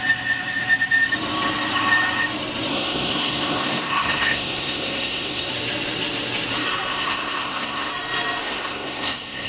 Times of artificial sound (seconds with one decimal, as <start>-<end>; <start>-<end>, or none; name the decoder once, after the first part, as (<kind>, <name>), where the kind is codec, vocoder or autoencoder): 2.7-5.5 (codec, SNAC); 6.9-7.9; 8.4-9.5